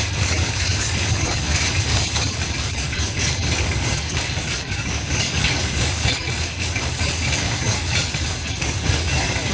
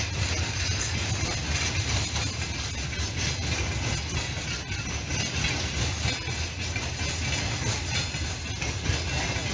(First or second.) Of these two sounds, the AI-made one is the first